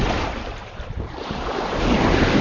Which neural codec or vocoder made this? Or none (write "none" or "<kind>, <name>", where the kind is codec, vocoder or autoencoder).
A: vocoder, BigVGAN v2